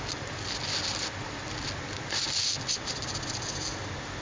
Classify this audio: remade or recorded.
recorded